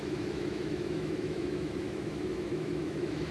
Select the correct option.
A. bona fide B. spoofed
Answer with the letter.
B